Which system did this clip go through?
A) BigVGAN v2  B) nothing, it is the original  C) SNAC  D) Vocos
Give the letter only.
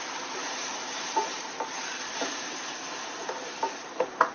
A